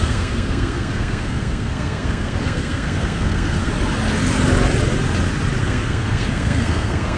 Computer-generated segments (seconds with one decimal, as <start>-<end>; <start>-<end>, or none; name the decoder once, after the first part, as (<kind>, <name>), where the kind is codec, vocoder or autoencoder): 0.0-3.7 (codec, SNAC); 5.6-7.2